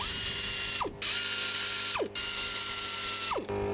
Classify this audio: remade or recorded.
recorded